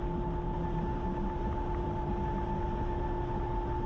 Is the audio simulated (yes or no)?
no